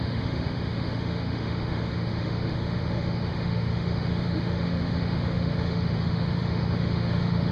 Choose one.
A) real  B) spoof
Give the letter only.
B